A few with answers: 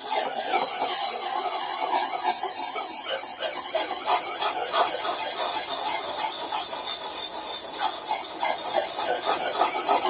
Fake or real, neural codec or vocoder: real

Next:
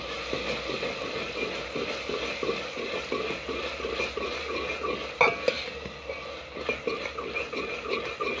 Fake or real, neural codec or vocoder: real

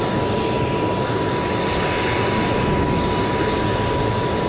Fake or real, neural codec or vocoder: real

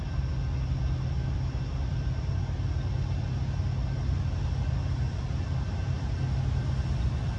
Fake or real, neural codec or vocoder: real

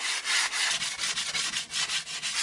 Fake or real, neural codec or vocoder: real